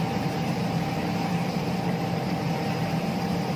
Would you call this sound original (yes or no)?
no